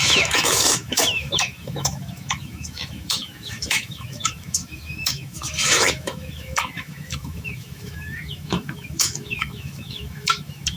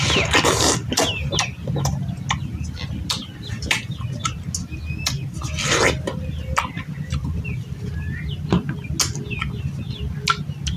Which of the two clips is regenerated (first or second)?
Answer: first